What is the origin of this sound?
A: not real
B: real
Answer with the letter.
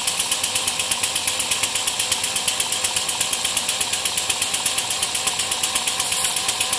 B